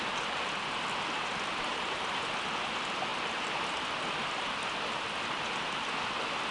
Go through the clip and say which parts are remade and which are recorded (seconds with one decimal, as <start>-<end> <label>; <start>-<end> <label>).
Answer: 0.0-1.7 recorded; 1.7-2.3 remade; 2.3-6.5 recorded